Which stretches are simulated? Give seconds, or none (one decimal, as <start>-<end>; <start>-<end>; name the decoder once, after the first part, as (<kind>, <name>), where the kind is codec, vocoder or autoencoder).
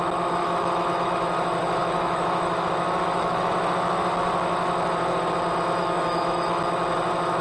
0.4-1.3 (autoencoder, DAC-VAE); 1.8-3.5; 5.8-6.6